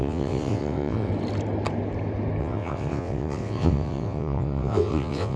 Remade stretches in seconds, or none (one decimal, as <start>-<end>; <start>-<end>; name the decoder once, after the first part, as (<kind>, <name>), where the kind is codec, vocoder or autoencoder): 0.0-1.1 (vocoder, WaveNeXt); 2.4-5.4

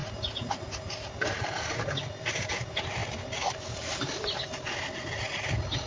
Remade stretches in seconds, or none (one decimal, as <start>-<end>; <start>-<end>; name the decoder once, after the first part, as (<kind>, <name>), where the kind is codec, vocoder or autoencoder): none

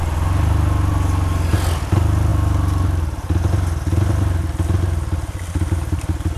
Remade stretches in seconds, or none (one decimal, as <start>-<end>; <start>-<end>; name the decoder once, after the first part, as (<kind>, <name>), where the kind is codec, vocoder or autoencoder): none

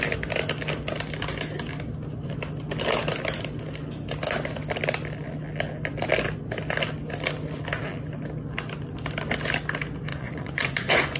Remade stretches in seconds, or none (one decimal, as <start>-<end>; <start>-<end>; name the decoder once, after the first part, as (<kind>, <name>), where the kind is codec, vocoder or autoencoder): 10.1-11.2 (vocoder, Vocos)